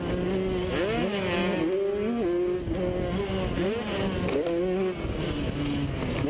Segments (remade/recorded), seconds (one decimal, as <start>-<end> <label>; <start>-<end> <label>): 0.0-6.3 recorded